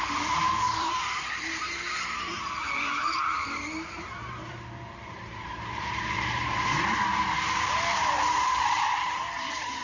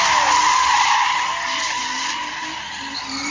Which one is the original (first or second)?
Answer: second